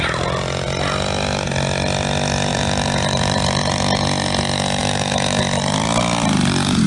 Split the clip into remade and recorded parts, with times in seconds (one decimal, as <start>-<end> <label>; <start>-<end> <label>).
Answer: 0.0-2.5 recorded; 2.5-4.0 remade; 4.0-4.8 recorded; 4.8-5.4 remade; 5.4-6.9 recorded